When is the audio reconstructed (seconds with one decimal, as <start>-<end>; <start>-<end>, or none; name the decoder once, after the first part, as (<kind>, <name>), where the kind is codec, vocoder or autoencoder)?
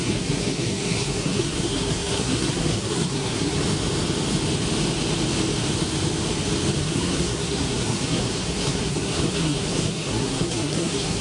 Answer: 0.0-3.6 (codec, SNAC); 6.8-11.2